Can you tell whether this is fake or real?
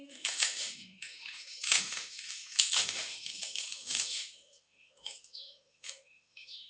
fake